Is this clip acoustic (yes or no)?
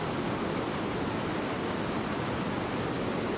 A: yes